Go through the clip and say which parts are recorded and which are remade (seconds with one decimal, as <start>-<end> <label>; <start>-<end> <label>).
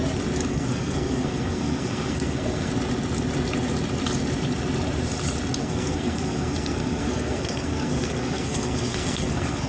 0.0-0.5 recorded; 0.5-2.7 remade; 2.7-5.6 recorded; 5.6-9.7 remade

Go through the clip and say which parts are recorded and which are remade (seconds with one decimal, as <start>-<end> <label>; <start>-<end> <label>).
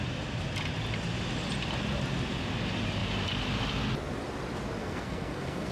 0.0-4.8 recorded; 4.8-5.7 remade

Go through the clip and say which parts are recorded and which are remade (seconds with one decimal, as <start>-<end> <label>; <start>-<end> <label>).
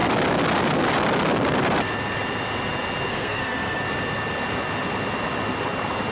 0.0-3.1 recorded; 3.1-3.8 remade; 3.8-6.1 recorded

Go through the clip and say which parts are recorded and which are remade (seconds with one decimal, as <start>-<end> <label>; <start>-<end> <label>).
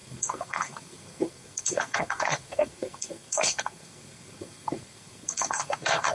0.0-6.1 remade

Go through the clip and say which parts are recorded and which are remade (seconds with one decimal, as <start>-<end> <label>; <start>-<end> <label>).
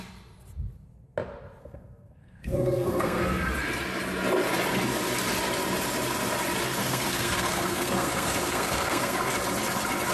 0.0-1.6 recorded; 1.6-3.2 remade; 3.2-6.8 recorded; 6.8-9.3 remade; 9.3-10.1 recorded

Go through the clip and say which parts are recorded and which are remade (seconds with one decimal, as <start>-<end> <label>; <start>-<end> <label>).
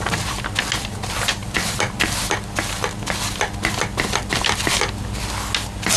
0.0-6.0 recorded